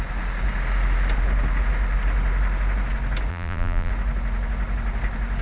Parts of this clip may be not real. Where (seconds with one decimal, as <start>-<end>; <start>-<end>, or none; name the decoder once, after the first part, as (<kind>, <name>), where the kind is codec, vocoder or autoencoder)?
3.3-3.9 (vocoder, BigVGAN v2)